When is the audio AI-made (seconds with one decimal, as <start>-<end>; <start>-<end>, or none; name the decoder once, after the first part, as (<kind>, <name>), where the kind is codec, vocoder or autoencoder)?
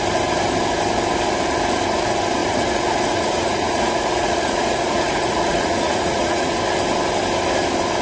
2.4-6.6 (vocoder, Vocos)